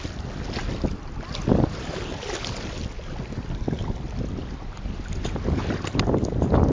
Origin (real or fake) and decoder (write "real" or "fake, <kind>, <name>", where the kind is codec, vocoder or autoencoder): real